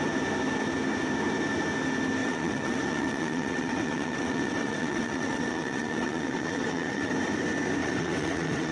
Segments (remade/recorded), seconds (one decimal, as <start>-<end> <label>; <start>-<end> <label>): 0.0-2.2 recorded; 2.2-7.1 remade; 7.1-7.8 recorded; 7.8-8.7 remade